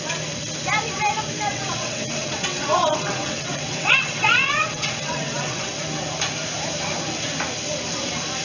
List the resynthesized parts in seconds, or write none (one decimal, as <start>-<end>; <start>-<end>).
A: 1.5-5.7